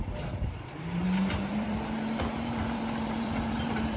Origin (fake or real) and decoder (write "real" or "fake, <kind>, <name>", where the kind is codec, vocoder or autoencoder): fake, vocoder, BigVGAN v2